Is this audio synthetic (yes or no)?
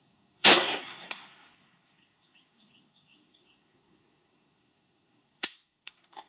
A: yes